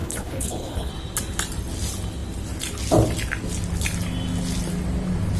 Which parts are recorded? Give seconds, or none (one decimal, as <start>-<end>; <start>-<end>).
0.9-5.4